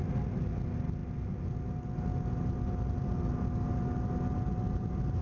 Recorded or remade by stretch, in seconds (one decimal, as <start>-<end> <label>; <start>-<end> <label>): 0.0-5.2 recorded

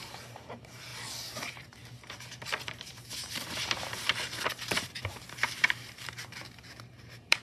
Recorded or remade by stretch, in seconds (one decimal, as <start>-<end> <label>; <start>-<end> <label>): 0.0-0.9 remade; 0.9-1.4 recorded; 1.4-7.4 remade